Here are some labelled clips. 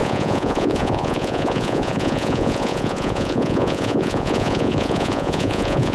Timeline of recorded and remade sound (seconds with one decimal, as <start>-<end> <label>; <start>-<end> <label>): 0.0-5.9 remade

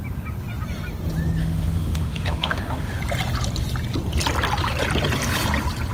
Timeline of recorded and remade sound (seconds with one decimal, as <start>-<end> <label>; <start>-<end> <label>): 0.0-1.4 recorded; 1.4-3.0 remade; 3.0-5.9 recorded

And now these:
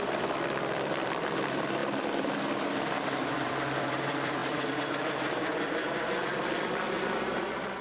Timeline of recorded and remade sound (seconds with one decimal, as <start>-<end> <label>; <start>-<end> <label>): 0.0-7.8 remade

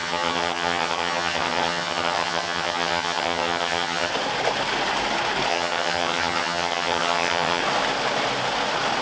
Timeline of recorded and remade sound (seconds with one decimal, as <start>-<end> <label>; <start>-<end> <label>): 0.0-4.1 remade; 4.1-5.5 recorded; 5.5-7.6 remade; 7.6-9.0 recorded